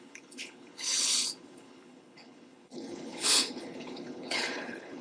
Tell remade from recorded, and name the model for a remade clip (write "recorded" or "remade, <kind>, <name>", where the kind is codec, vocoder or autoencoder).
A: remade, codec, HILCodec